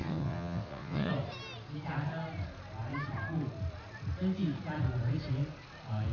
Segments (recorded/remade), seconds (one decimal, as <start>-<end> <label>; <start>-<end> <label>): 0.0-1.1 remade; 1.1-6.1 recorded